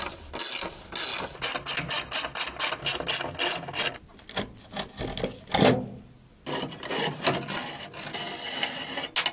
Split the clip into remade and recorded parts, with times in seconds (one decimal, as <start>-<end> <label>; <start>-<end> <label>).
0.0-9.3 recorded